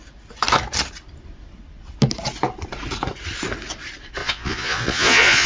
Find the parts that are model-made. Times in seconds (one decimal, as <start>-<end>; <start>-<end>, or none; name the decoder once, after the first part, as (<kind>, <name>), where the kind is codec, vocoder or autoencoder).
4.2-5.5 (vocoder, Vocos)

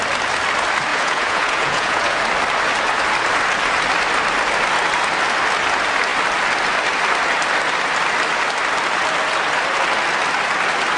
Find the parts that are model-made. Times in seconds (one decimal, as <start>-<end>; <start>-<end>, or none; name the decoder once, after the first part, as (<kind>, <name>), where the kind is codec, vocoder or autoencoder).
0.9-2.2 (vocoder, Vocos)